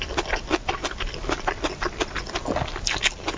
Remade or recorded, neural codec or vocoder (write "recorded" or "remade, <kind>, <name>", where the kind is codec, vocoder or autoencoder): recorded